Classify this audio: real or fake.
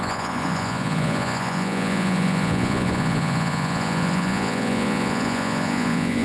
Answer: fake